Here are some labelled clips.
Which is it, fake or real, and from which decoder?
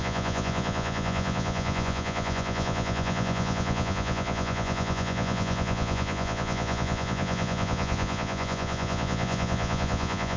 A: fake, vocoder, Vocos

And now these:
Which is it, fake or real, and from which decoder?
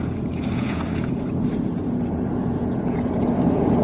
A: fake, vocoder, Vocos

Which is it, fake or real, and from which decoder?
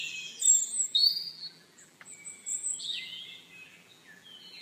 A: fake, vocoder, BigVGAN v2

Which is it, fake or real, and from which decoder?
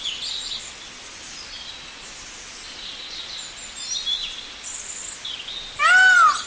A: real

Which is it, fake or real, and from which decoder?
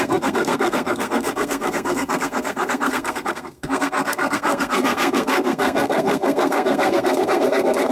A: fake, codec, SNAC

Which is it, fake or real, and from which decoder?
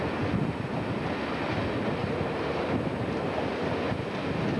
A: real